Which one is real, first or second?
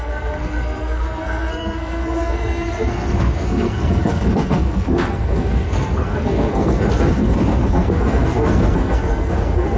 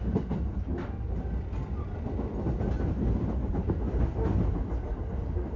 second